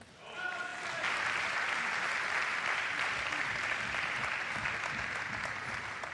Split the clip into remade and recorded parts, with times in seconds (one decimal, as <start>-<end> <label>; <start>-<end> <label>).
0.0-6.1 recorded